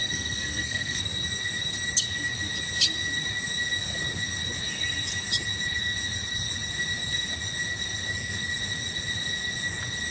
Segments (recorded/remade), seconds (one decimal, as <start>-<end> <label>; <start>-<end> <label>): 0.0-1.0 remade; 1.0-10.1 recorded